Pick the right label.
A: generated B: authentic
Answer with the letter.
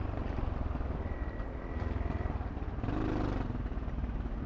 B